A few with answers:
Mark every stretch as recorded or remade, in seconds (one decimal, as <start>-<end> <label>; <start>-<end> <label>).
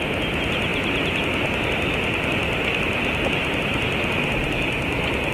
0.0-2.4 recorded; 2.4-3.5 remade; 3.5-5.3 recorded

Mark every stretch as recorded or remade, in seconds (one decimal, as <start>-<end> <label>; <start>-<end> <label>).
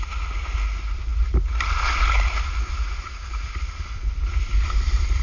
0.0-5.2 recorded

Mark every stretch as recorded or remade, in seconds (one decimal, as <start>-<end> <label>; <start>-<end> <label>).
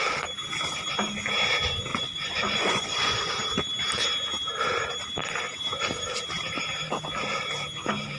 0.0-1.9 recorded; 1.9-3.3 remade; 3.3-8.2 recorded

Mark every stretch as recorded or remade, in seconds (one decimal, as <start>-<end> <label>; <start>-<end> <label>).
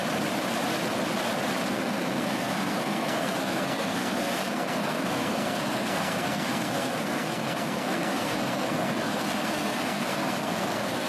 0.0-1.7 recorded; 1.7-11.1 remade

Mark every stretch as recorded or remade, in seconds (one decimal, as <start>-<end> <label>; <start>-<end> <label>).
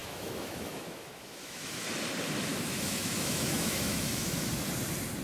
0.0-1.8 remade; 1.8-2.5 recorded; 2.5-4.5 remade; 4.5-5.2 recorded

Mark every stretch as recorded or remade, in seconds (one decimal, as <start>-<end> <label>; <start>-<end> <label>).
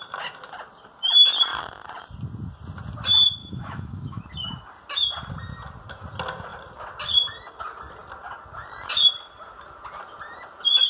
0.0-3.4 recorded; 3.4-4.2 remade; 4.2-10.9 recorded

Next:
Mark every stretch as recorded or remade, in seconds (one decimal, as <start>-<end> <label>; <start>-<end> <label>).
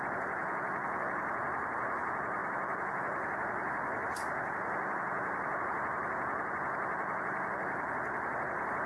0.0-8.9 remade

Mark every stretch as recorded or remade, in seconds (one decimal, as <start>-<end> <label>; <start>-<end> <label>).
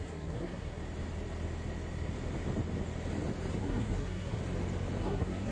0.0-0.8 remade; 0.8-3.5 recorded; 3.5-4.4 remade; 4.4-5.0 recorded; 5.0-5.5 remade